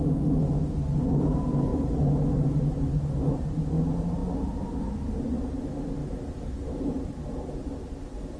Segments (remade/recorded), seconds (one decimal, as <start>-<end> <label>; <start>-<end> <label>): 0.0-8.4 recorded